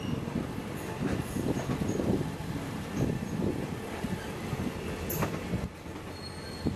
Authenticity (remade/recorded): recorded